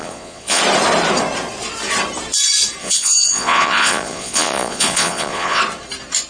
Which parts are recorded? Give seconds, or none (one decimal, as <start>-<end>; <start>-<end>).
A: 0.6-2.8; 5.6-6.3